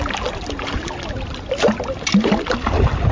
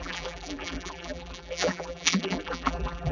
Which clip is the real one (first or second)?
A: first